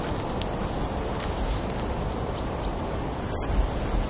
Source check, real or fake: real